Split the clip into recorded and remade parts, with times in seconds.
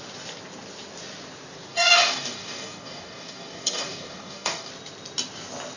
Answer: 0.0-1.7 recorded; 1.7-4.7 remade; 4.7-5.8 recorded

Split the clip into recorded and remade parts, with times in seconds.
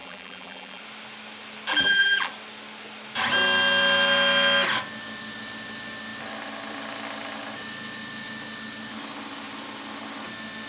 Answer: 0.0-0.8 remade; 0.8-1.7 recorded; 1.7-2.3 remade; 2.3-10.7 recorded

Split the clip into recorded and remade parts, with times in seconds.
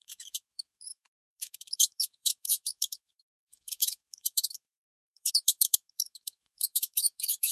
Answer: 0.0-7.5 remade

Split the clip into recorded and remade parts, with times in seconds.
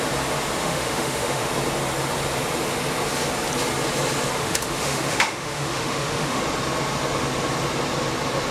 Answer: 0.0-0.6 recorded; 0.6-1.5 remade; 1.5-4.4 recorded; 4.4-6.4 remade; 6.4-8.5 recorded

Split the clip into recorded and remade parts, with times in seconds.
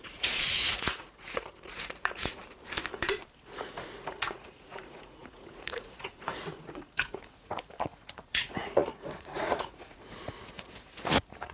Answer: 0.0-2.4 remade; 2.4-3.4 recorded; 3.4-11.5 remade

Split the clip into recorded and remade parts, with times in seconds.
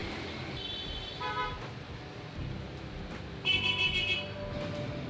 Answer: 0.0-5.1 recorded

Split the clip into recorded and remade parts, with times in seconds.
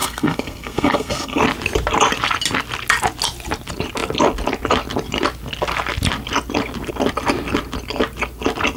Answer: 0.0-1.4 remade; 1.4-8.8 recorded